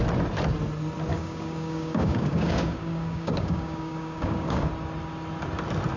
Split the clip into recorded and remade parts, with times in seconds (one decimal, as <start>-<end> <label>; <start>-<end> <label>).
0.0-1.1 recorded; 1.1-4.7 remade; 4.7-6.0 recorded